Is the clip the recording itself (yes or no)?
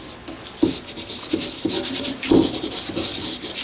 yes